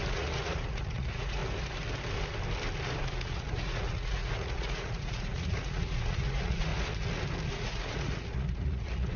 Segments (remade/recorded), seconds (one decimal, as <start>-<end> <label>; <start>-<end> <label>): 0.0-1.4 remade; 1.4-3.0 recorded; 3.0-6.7 remade; 6.7-7.5 recorded; 7.5-9.2 remade